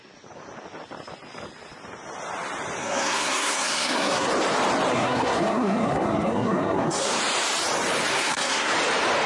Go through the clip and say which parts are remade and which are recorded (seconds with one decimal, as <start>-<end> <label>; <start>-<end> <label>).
0.0-2.8 recorded; 2.8-4.3 remade; 4.3-4.9 recorded; 4.9-7.2 remade; 7.2-8.1 recorded; 8.1-8.7 remade; 8.7-9.3 recorded